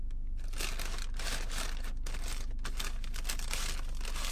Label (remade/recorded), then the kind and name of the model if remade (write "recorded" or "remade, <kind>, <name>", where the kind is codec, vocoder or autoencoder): recorded